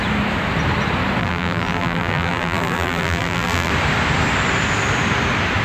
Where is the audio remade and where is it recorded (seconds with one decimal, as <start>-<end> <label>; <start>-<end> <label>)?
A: 0.0-1.2 recorded; 1.2-3.7 remade; 3.7-5.6 recorded